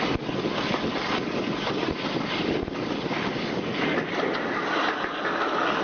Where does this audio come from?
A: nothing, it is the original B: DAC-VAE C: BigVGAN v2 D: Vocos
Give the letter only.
A